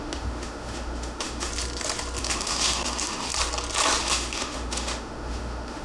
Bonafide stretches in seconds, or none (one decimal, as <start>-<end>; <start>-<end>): 1.5-2.2; 3.3-4.0